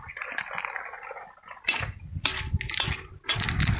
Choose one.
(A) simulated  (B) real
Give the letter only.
B